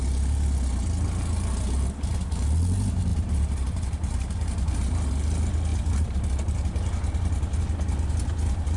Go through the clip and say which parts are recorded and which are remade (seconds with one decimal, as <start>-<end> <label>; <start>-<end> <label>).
0.0-3.1 recorded; 3.1-4.7 remade; 4.7-8.8 recorded